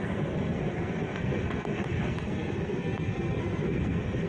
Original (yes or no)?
no